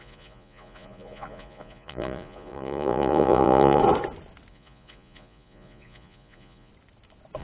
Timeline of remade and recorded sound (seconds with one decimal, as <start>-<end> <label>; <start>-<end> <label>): 0.0-3.8 remade; 3.8-4.5 recorded; 4.5-6.7 remade; 6.7-7.4 recorded